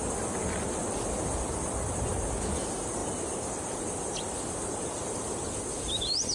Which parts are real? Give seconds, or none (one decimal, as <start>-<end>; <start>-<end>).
0.0-2.6